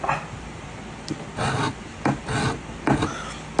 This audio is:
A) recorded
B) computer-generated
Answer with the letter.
A